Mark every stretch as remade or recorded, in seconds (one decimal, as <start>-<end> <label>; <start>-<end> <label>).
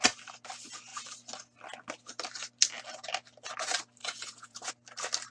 0.0-4.0 recorded; 4.0-4.7 remade; 4.7-5.3 recorded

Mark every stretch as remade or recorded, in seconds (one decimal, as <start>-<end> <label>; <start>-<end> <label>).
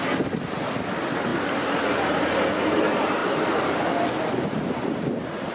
0.0-3.2 recorded; 3.2-4.1 remade; 4.1-5.5 recorded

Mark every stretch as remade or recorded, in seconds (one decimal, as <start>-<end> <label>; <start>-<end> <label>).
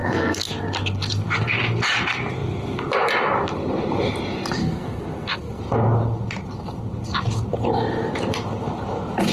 0.0-0.5 remade; 0.5-4.6 recorded; 4.6-5.6 remade; 5.6-9.3 recorded